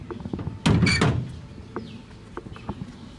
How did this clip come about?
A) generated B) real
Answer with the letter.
B